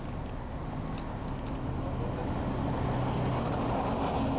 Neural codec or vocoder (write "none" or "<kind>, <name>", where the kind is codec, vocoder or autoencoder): none